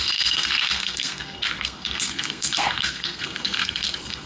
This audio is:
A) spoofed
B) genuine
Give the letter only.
A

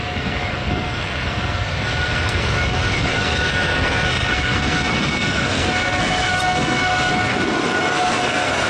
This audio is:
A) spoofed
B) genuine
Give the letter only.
A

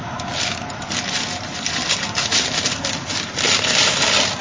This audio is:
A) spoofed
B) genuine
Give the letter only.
B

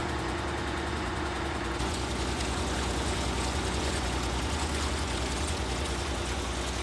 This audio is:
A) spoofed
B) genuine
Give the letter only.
A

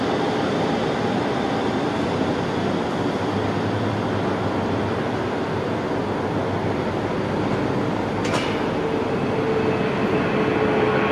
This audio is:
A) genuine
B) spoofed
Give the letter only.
A